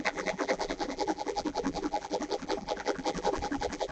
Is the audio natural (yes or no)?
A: no